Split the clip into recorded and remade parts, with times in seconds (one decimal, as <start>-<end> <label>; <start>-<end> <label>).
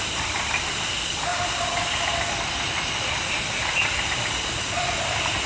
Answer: 0.0-5.5 remade